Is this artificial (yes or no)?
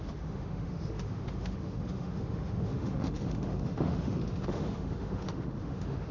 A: yes